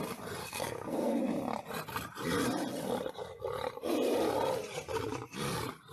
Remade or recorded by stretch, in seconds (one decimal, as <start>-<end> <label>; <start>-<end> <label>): 0.0-0.4 recorded; 0.4-1.2 remade; 1.2-5.9 recorded